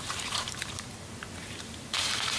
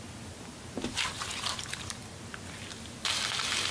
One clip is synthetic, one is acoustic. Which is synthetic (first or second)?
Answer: first